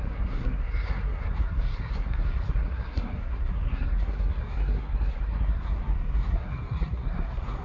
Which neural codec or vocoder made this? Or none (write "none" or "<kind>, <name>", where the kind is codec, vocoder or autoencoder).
codec, SNAC